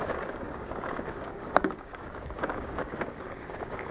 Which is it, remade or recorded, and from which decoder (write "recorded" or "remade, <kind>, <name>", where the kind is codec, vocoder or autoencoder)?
remade, codec, DAC